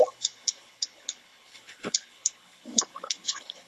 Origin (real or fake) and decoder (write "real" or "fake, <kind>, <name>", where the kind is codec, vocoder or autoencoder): fake, codec, HILCodec